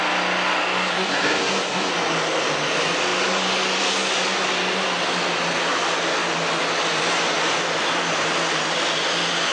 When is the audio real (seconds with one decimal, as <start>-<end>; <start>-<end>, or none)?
0.0-0.9; 1.9-9.5